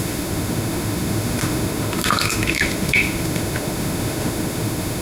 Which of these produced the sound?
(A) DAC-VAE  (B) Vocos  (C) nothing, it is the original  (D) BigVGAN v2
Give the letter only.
A